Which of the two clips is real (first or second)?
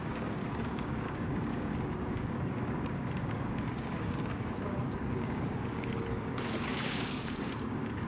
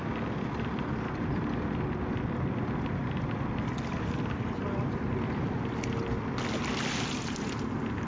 second